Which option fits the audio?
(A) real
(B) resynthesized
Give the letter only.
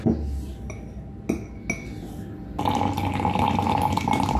A